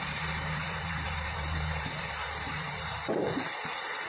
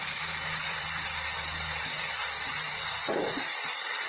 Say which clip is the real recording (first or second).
second